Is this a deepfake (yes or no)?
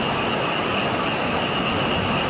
no